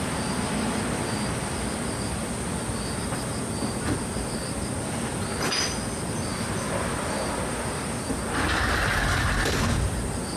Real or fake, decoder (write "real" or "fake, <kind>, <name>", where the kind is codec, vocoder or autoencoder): real